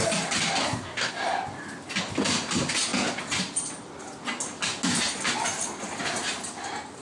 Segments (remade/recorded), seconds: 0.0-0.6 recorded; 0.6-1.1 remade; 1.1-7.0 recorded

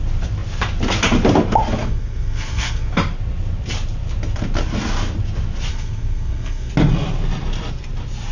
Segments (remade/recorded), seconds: 0.0-1.8 recorded; 1.8-2.9 remade; 2.9-5.7 recorded; 5.7-6.7 remade; 6.7-8.3 recorded